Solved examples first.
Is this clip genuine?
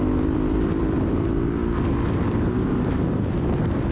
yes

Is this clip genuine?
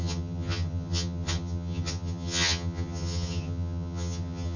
no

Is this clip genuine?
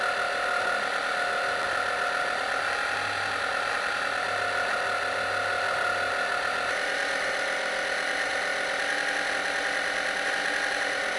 yes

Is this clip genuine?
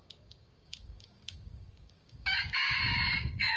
no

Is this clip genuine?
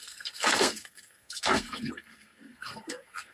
no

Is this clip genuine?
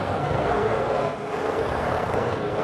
no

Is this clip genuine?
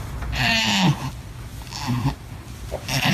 yes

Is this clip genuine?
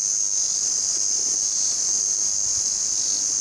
yes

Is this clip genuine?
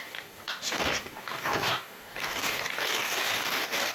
no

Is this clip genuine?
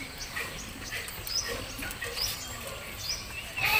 yes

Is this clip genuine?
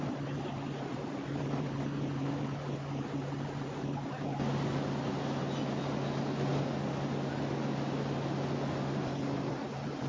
yes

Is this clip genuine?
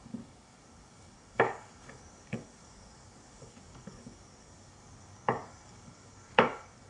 no